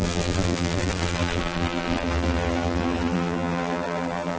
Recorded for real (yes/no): no